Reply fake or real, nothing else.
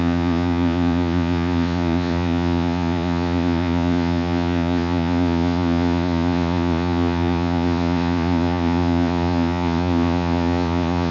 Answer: fake